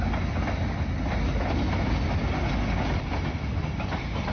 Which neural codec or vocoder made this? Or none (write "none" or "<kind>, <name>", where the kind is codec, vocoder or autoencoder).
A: none